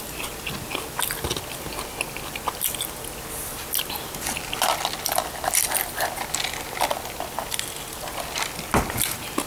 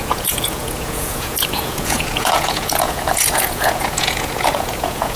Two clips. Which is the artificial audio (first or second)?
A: second